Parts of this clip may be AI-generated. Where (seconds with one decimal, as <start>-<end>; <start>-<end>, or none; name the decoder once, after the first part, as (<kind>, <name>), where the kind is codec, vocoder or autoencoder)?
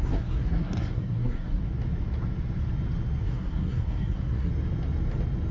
0.0-1.6 (codec, SNAC); 3.2-4.5